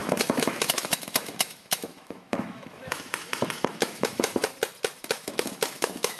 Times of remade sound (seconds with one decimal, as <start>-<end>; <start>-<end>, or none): 0.0-4.4; 5.0-6.2